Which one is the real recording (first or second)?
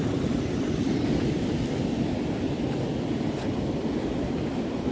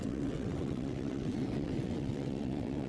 first